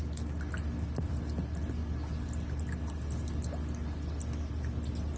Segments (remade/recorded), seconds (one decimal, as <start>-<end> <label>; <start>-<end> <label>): 0.0-5.2 recorded

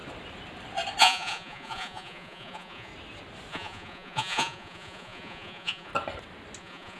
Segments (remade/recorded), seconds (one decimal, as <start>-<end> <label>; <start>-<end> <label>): 0.0-1.0 recorded; 1.0-2.9 remade; 2.9-3.5 recorded; 3.5-5.9 remade; 5.9-6.6 recorded; 6.6-7.0 remade

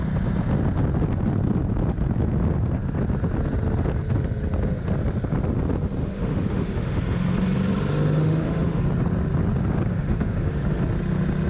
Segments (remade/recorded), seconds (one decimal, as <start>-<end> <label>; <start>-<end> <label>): 0.0-6.0 recorded; 6.0-7.0 remade; 7.0-8.2 recorded; 8.2-8.8 remade; 8.8-9.9 recorded; 9.9-10.8 remade; 10.8-11.5 recorded

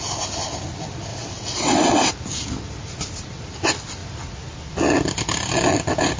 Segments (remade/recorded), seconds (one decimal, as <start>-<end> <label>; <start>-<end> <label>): 0.0-1.1 recorded; 1.1-2.1 remade; 2.1-6.2 recorded